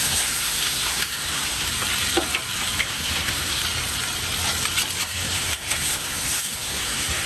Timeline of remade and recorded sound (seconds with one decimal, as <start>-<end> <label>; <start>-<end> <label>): 0.0-1.7 remade; 1.7-2.8 recorded; 2.8-3.6 remade; 3.6-5.0 recorded; 5.0-7.3 remade